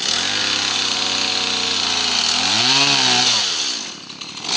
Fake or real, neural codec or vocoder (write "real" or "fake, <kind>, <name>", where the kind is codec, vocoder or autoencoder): real